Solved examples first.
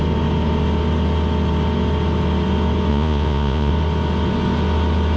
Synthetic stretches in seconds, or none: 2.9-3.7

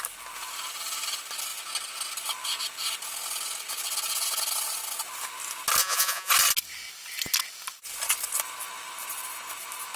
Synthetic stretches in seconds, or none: 5.8-6.3

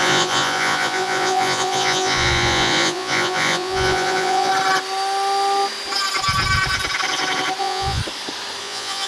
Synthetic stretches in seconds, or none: 0.0-4.5; 7.6-8.0; 8.6-9.1